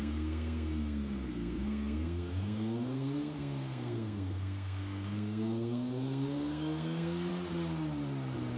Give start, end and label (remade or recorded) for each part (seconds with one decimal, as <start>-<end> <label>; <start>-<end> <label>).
0.0-7.3 remade; 7.3-8.6 recorded